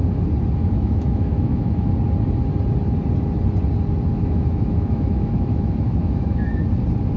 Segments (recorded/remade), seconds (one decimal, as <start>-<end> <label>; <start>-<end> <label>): 0.0-0.6 recorded; 0.6-1.9 remade; 1.9-4.1 recorded; 4.1-6.4 remade; 6.4-7.2 recorded